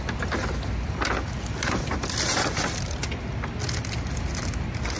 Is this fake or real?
real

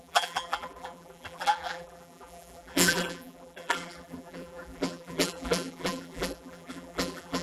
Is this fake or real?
fake